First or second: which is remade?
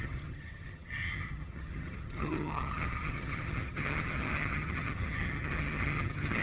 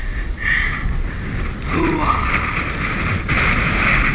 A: first